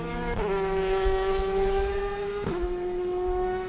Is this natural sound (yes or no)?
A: no